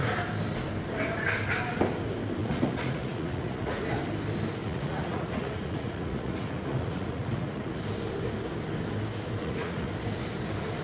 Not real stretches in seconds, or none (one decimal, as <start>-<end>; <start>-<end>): 2.4-3.8; 4.6-7.8; 9.4-9.9